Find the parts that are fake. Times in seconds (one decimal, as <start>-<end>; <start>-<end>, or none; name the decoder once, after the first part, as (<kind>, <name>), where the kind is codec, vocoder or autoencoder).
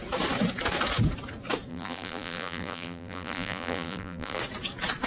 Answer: 1.7-4.4 (vocoder, BigVGAN v2)